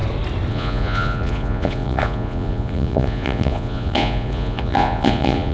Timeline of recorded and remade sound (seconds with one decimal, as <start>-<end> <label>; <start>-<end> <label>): 0.0-0.5 recorded; 0.5-5.5 remade